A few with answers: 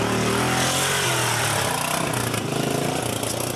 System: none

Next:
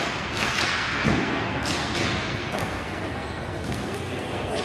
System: codec, SNAC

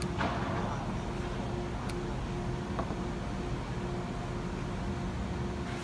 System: none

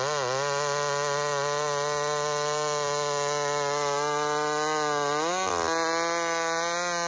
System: none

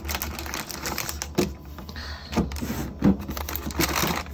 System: none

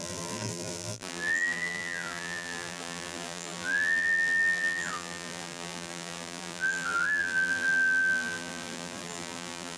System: vocoder, BigVGAN v2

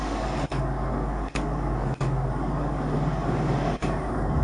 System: codec, DAC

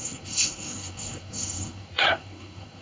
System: codec, SNAC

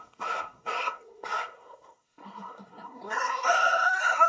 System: codec, SNAC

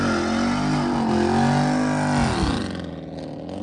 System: none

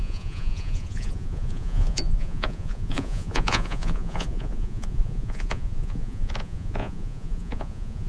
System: vocoder, Vocos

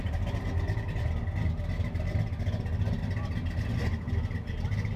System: none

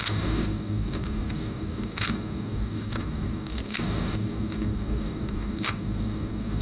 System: codec, DAC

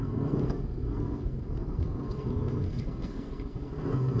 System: codec, SNAC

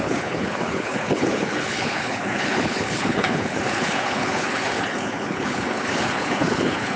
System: codec, HILCodec